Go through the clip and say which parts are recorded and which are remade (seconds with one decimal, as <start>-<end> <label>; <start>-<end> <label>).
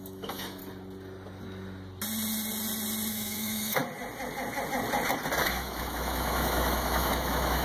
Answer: 0.0-0.6 remade; 0.6-3.1 recorded; 3.1-3.8 remade; 3.8-5.4 recorded; 5.4-7.6 remade